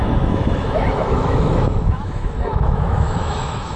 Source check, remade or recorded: remade